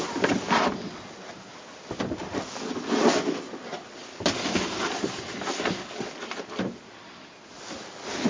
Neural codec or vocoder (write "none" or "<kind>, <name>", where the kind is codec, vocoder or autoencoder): none